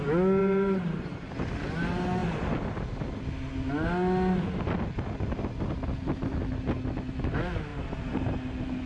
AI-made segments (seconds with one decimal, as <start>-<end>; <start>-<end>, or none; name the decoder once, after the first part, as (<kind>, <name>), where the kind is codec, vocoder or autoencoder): 0.4-1.3 (vocoder, BigVGAN v2); 7.7-8.3